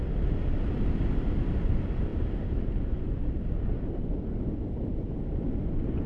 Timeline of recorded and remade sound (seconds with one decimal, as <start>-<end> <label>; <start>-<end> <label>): 0.0-6.1 recorded